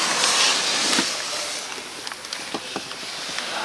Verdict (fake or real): real